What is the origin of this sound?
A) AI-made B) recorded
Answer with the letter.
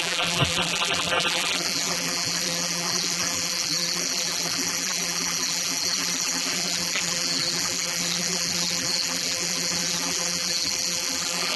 A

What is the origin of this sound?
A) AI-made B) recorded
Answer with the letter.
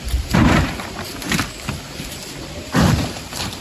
A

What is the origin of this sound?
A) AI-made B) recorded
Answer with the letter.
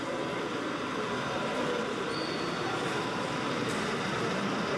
B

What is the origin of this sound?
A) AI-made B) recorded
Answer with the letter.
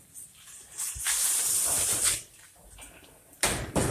B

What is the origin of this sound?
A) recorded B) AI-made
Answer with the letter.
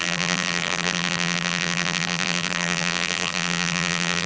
B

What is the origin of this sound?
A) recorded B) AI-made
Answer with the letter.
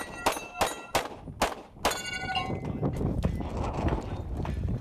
A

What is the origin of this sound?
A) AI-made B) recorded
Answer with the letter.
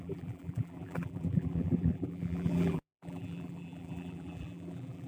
A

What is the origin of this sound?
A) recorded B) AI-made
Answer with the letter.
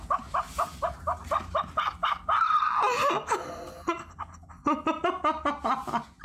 A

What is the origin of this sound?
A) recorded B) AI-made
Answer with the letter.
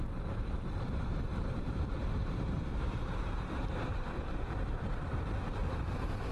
B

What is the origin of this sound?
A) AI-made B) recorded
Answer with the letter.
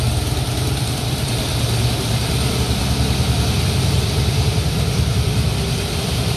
A